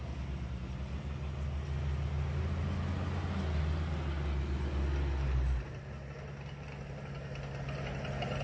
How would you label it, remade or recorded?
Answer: recorded